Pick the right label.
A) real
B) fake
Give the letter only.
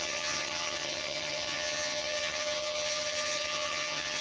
B